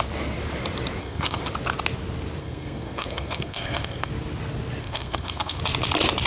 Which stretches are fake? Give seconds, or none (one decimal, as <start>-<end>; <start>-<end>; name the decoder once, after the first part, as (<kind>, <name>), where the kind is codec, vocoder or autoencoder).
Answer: 1.0-1.5 (codec, SNAC); 2.4-4.1; 4.8-5.6